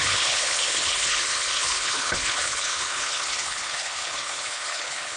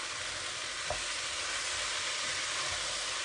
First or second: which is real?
second